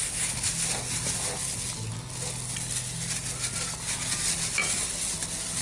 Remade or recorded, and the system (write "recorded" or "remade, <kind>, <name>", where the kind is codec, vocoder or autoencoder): recorded